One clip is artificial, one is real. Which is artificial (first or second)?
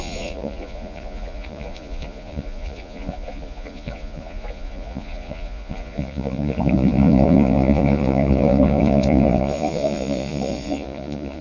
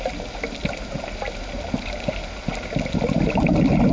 first